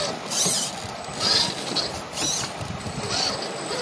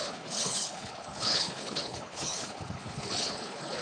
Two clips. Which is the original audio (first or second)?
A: first